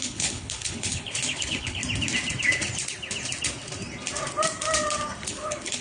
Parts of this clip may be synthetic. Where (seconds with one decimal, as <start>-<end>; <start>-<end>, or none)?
0.0-1.8; 5.3-5.8